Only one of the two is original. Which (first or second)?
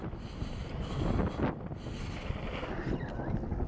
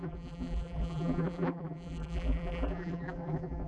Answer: first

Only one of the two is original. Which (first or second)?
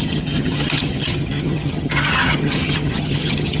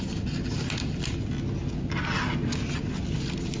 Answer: second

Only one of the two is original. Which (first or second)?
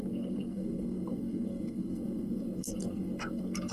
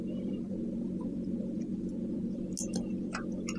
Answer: second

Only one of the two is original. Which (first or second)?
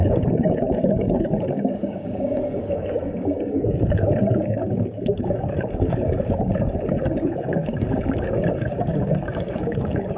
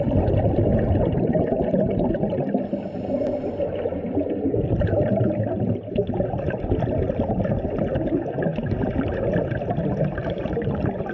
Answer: second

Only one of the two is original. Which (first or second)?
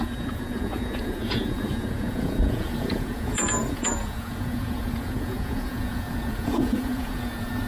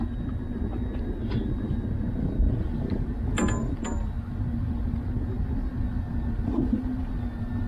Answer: second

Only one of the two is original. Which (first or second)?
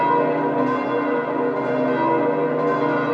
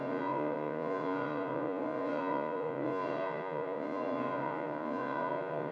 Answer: first